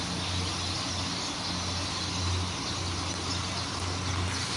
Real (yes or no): yes